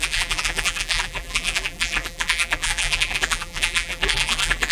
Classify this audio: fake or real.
fake